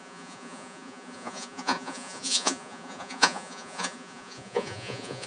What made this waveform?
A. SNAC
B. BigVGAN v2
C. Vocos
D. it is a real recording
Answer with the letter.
C